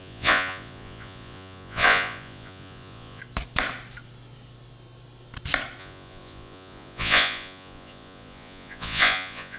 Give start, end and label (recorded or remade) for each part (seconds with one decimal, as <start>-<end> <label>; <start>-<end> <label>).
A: 0.0-3.2 remade; 3.2-5.8 recorded; 5.8-9.6 remade